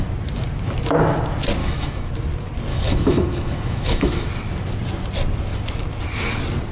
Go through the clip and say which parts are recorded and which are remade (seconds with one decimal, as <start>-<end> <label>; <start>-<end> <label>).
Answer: 0.0-1.6 recorded; 1.6-2.1 remade; 2.1-2.7 recorded; 2.7-4.3 remade; 4.3-6.7 recorded